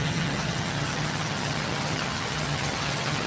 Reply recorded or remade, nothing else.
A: remade